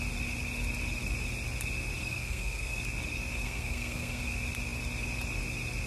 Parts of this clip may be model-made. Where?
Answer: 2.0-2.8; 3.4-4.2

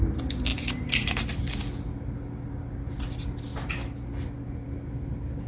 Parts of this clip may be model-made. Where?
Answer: none

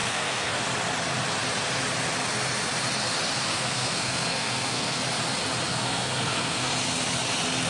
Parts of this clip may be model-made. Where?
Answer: 0.0-0.6; 3.5-5.0; 5.7-6.7

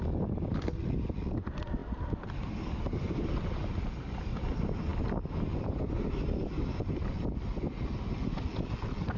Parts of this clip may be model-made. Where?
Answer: none

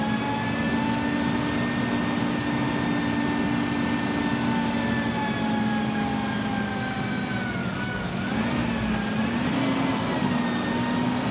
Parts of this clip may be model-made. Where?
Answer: 7.6-8.4